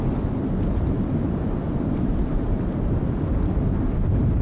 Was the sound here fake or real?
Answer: real